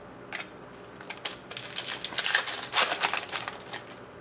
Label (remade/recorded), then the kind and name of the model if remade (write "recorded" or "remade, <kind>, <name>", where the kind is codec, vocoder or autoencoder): recorded